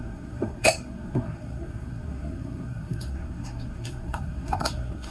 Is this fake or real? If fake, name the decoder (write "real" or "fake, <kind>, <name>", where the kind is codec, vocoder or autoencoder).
fake, codec, SNAC